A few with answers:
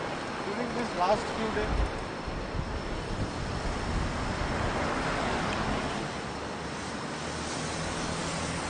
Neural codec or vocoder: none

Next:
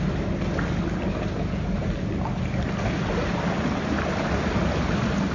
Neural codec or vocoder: none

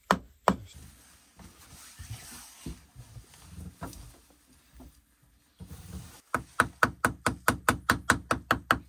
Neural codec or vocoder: none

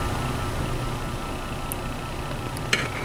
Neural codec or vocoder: none